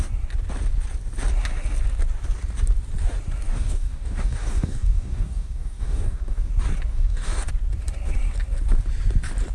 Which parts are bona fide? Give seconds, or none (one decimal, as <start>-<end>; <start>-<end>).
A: 0.0-3.5; 6.5-6.9; 7.5-9.5